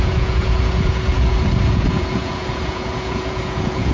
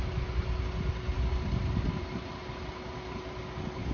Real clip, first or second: second